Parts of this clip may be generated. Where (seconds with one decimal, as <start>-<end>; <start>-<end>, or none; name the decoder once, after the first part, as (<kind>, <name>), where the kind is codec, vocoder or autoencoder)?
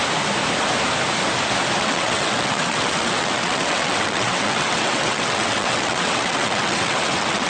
1.8-7.5 (vocoder, WaveNeXt)